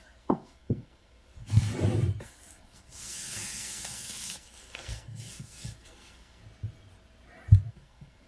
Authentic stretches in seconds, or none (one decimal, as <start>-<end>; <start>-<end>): 1.7-2.2; 6.4-7.7